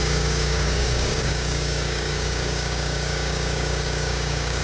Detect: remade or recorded remade